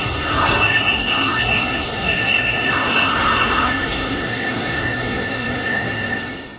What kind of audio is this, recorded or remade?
remade